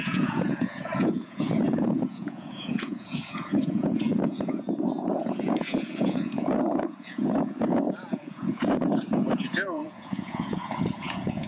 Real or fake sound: fake